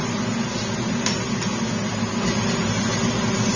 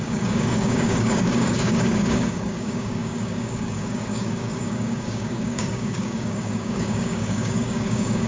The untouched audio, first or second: first